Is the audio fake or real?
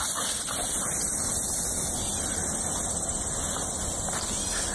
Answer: real